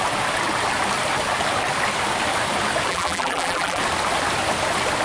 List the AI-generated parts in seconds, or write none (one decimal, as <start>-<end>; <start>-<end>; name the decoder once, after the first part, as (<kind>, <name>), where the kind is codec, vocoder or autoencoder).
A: 2.9-3.8 (vocoder, BigVGAN v2)